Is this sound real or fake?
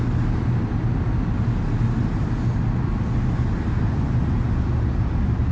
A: real